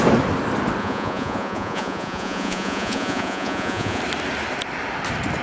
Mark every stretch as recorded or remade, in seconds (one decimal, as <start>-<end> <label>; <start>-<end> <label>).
0.0-0.8 recorded; 0.8-4.0 remade; 4.0-5.4 recorded